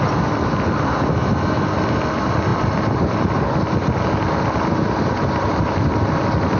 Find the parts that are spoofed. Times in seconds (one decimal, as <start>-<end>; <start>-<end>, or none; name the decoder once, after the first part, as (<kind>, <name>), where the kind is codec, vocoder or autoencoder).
none